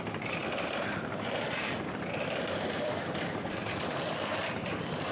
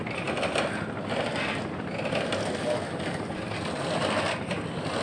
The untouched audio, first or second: second